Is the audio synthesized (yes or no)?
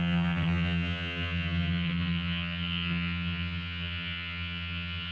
yes